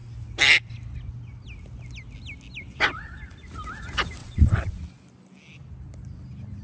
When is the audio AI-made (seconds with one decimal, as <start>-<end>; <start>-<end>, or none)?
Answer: 2.7-3.2; 4.2-4.7